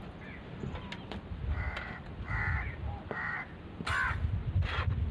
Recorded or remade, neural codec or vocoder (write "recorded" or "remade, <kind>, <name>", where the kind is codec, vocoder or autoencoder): recorded